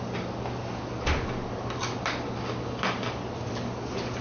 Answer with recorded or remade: recorded